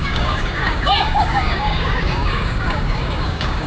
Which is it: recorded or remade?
remade